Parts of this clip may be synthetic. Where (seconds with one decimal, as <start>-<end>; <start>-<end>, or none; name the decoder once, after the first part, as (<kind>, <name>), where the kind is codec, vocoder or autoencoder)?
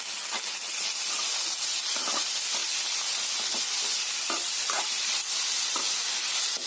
none